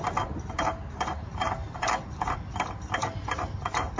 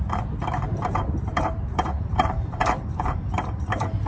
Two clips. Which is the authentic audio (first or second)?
first